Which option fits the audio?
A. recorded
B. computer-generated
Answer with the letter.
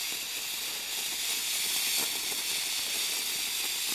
A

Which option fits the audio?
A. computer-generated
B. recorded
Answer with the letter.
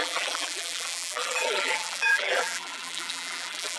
A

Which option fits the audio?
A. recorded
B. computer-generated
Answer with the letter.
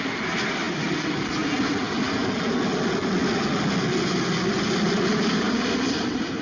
A